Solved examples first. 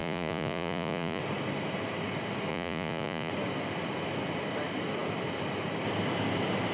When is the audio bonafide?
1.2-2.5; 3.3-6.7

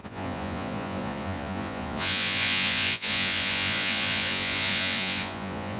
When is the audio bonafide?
none

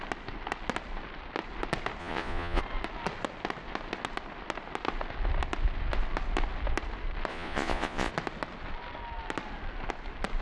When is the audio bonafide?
0.0-2.0; 2.6-7.3; 8.1-10.4